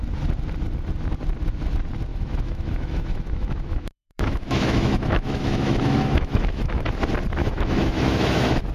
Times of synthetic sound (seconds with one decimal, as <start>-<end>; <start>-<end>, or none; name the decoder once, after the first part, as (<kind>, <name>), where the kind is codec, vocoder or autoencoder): 2.1-6.9 (autoencoder, DAC-VAE); 7.4-8.7